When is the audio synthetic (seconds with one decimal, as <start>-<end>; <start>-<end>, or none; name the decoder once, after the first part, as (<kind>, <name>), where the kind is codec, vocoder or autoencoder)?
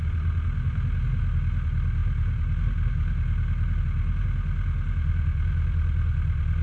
none